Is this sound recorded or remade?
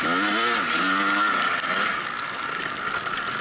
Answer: recorded